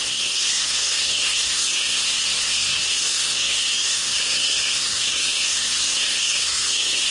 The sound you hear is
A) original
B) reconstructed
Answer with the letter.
B